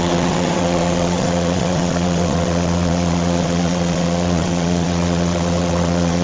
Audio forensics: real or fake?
fake